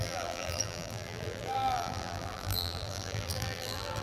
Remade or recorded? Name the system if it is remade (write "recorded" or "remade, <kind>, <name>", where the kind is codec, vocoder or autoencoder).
remade, vocoder, BigVGAN v2